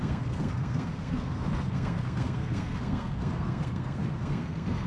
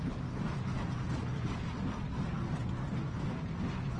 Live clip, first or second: second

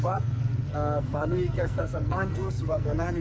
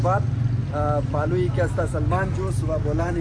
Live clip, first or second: second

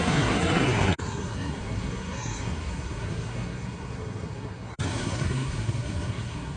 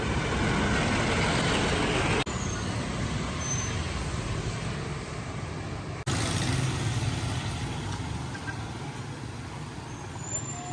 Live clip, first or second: second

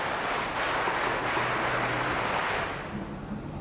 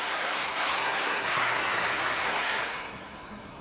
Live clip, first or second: first